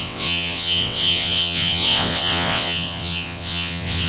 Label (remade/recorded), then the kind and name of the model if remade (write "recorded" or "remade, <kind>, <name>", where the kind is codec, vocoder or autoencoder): remade, vocoder, WaveNeXt